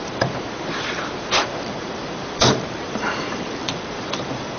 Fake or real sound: fake